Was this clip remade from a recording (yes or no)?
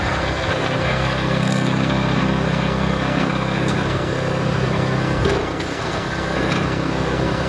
yes